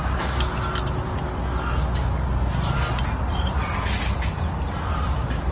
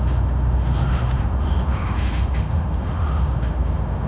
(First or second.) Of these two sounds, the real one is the first